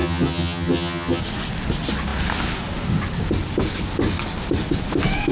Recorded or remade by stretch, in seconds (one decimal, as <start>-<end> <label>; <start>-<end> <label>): 0.0-1.2 remade; 1.2-5.3 recorded